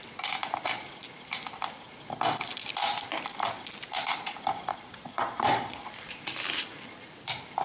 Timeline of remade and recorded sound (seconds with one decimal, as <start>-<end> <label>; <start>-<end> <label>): 0.0-4.7 recorded; 4.7-6.1 remade; 6.1-7.6 recorded